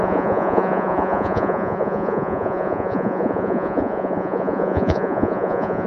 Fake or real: fake